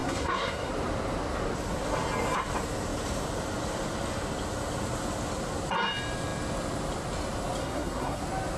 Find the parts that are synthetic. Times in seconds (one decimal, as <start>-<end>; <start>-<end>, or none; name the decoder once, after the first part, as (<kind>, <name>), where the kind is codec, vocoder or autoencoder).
0.0-0.7 (codec, SNAC); 7.6-8.2